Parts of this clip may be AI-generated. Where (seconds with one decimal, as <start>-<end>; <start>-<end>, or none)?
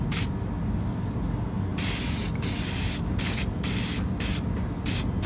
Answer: none